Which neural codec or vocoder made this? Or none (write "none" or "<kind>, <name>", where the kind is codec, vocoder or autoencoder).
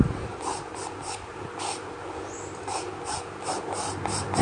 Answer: none